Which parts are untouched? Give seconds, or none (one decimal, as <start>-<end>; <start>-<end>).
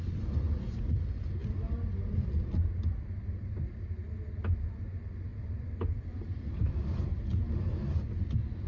0.0-5.3; 7.0-8.7